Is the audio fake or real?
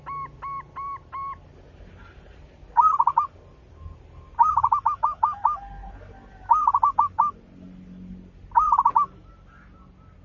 real